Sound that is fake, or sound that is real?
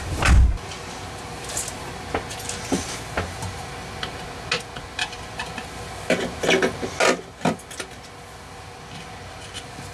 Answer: real